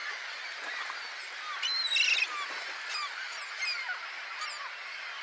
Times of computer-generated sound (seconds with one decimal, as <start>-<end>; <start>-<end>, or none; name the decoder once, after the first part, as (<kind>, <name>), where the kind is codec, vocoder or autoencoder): none